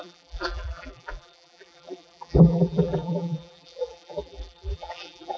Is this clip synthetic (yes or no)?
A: yes